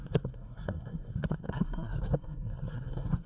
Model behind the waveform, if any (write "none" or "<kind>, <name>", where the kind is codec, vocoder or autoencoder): codec, SNAC